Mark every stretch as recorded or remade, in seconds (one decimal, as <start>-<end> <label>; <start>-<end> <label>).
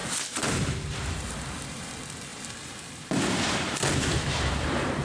0.0-1.9 remade; 1.9-2.3 recorded; 2.3-3.2 remade; 3.2-5.0 recorded